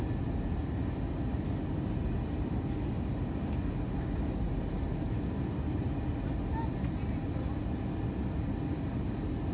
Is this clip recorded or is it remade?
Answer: recorded